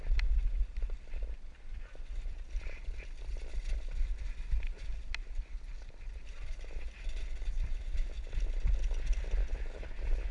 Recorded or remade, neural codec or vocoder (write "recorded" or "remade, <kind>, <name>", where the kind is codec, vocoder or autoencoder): recorded